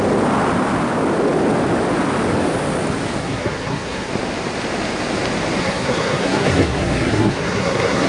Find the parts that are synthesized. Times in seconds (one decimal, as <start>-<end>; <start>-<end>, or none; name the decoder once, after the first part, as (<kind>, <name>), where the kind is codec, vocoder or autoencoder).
3.2-4.1 (codec, SNAC); 5.6-8.1